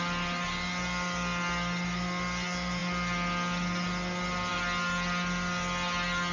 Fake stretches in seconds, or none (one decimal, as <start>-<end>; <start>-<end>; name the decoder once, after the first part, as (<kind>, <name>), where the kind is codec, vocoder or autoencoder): none